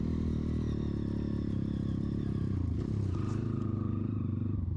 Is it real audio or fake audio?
real